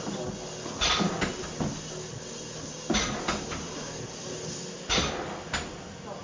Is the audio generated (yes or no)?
no